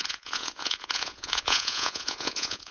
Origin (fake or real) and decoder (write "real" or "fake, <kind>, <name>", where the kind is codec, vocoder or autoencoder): fake, vocoder, Vocos